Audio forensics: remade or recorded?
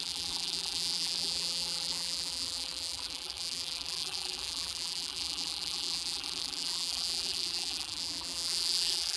remade